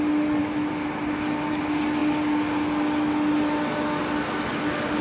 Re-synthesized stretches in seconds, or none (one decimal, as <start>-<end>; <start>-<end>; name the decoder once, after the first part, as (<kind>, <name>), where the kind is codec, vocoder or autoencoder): none